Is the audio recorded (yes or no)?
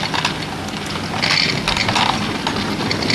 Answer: yes